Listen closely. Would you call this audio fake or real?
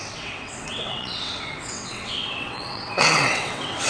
fake